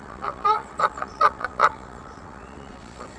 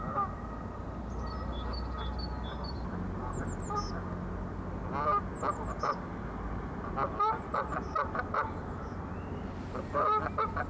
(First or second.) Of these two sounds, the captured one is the second